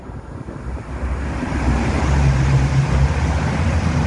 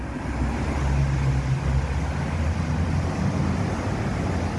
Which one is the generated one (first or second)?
first